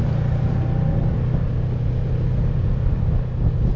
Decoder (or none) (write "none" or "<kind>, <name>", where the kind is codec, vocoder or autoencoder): none